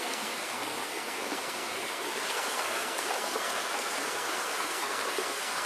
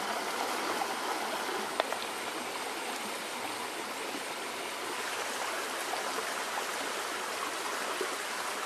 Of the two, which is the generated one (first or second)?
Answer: first